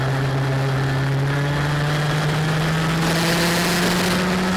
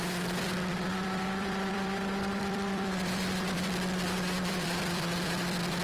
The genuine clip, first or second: first